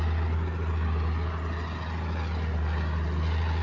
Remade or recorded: recorded